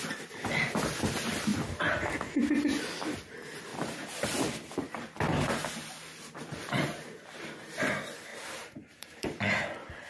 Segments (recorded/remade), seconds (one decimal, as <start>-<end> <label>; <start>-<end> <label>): 0.0-3.7 recorded; 3.7-7.8 remade; 7.8-8.3 recorded; 8.3-9.4 remade; 9.4-10.1 recorded